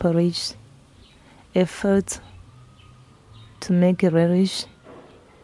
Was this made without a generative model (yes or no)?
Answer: yes